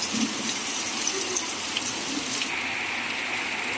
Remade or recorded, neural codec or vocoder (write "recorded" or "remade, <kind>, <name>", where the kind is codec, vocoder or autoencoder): recorded